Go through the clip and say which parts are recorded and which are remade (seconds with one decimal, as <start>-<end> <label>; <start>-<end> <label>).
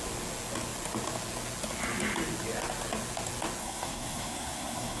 0.0-3.6 recorded; 3.6-5.0 remade